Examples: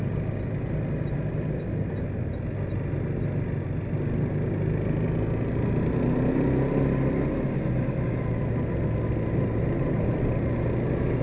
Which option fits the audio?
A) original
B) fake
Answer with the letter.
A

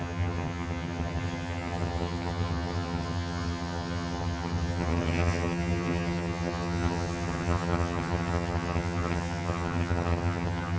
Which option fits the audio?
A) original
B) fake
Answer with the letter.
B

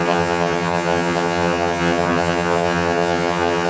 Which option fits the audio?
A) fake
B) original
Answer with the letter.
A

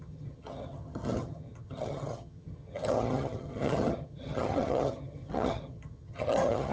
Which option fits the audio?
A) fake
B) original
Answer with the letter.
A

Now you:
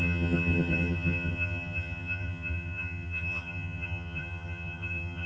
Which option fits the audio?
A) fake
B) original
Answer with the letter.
A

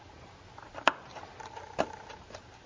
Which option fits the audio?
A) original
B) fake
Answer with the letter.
A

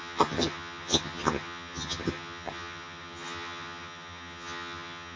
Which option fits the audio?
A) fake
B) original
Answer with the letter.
A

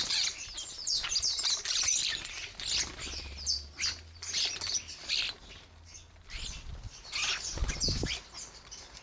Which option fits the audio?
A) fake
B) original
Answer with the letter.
B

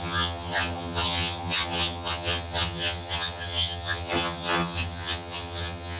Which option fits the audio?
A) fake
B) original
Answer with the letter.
A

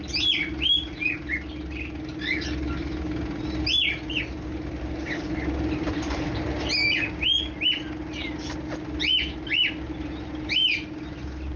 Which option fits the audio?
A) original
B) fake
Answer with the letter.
A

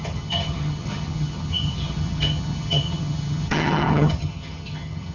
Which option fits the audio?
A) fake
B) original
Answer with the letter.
A